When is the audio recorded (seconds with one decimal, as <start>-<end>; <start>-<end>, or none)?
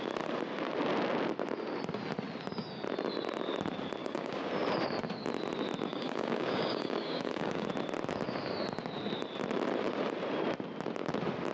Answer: 0.0-4.0; 4.5-5.9; 7.7-11.5